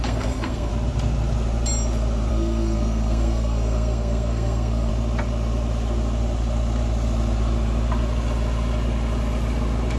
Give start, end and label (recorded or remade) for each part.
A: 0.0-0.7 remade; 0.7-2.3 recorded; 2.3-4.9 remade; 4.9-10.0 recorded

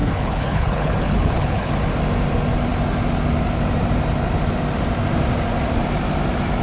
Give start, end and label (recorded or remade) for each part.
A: 0.0-1.7 remade; 1.7-6.6 recorded